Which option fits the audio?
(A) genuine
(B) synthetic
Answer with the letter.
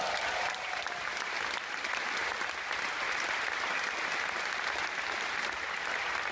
A